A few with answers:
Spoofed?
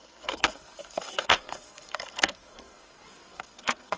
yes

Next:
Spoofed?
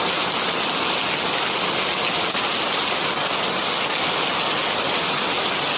no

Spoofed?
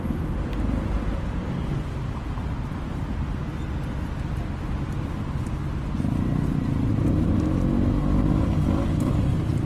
no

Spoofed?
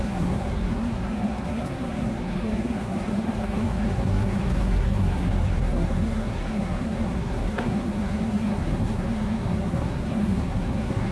yes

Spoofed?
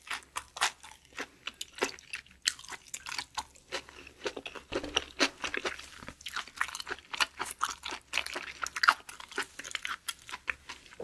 no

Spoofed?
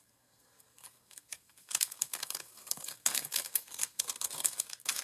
yes